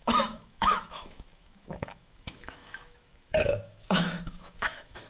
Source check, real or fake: fake